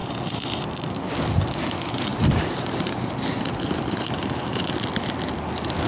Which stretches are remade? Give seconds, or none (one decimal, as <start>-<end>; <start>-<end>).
2.1-4.6

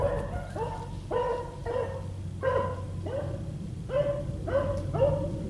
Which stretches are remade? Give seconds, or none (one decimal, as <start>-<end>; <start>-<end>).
none